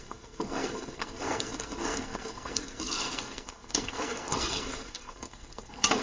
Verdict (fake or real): fake